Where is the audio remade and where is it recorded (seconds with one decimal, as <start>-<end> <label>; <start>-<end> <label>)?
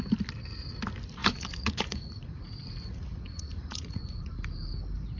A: 0.0-1.2 recorded; 1.2-4.3 remade; 4.3-5.2 recorded